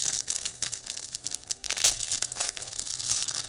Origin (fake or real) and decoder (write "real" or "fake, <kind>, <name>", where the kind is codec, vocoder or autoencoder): fake, codec, SNAC